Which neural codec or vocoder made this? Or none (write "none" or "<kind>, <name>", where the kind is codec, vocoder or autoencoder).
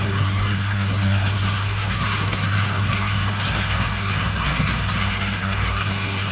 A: codec, SNAC